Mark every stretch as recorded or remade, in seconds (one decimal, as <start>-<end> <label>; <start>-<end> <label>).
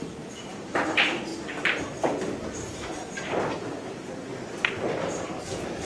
0.0-1.3 remade; 1.3-3.5 recorded; 3.5-4.3 remade; 4.3-5.0 recorded; 5.0-5.8 remade